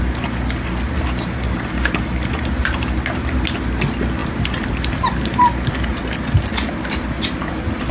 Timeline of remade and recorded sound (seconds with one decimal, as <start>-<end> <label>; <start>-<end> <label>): 0.0-7.9 recorded

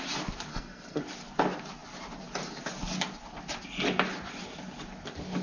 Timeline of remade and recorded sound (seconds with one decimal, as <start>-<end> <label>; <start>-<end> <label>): 0.0-0.5 recorded; 0.5-1.0 remade; 1.0-5.4 recorded